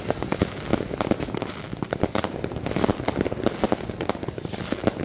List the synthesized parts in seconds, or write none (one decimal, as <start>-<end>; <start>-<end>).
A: none